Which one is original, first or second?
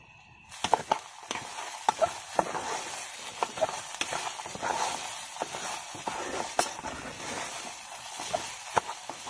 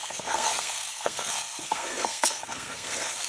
first